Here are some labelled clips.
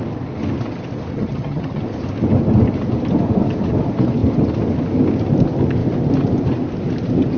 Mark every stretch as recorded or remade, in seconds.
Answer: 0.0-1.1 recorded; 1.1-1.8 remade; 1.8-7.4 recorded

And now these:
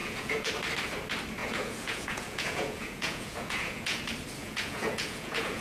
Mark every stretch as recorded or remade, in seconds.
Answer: 0.0-0.5 remade; 0.5-1.4 recorded; 1.4-4.0 remade; 4.0-4.4 recorded; 4.4-5.6 remade

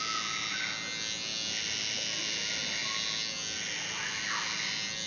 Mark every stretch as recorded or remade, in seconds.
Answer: 0.0-5.1 recorded

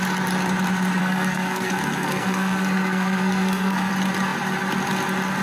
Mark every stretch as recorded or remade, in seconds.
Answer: 0.0-1.0 recorded; 1.0-3.9 remade; 3.9-5.4 recorded